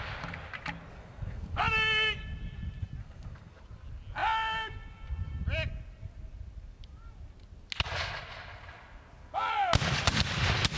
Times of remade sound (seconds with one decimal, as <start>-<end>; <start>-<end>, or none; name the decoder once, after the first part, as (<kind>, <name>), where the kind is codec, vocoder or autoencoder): 0.9-1.6 (codec, SNAC); 3.0-3.6